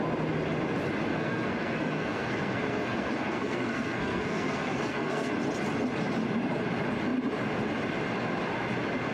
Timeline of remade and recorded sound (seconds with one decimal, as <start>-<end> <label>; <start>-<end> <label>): 0.0-1.1 recorded; 1.1-5.3 remade; 5.3-9.1 recorded